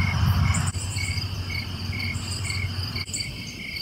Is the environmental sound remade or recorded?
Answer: remade